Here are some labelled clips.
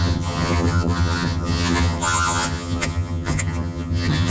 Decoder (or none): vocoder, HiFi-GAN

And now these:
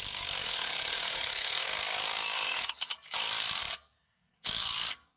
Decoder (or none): codec, DAC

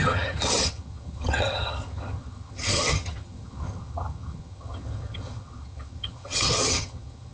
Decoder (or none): vocoder, HiFi-GAN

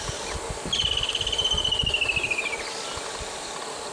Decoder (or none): none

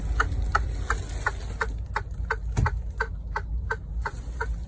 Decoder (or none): none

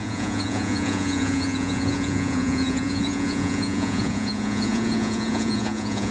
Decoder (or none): vocoder, Vocos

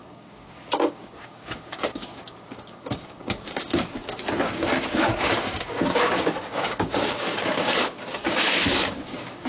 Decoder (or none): codec, DAC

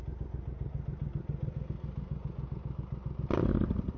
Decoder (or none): none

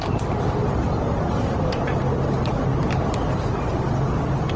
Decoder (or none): none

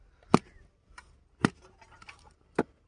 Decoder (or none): none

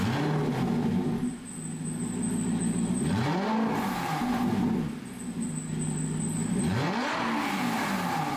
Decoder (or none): none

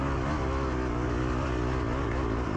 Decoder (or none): none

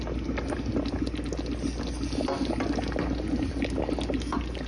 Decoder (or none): none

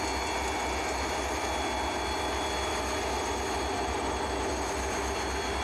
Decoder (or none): none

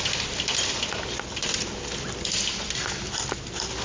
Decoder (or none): none